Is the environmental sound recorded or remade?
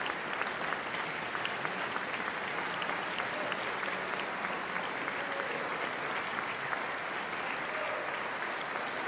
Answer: recorded